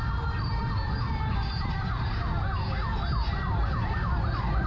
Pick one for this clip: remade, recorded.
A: recorded